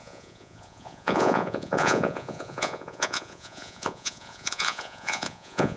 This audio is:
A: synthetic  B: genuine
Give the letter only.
A